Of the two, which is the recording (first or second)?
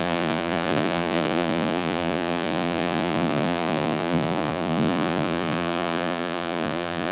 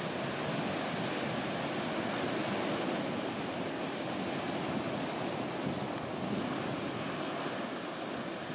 second